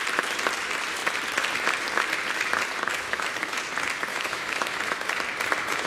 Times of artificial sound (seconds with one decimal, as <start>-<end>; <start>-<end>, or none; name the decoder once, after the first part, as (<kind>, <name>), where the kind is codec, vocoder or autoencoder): 2.9-3.6 (autoencoder, DAC-VAE); 4.1-5.0